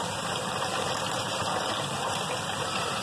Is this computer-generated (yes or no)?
yes